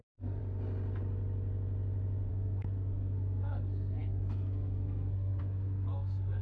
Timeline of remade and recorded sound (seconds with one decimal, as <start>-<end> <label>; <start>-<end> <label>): 0.0-0.4 remade; 0.4-2.3 recorded; 2.3-6.4 remade